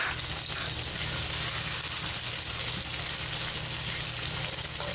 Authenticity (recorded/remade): recorded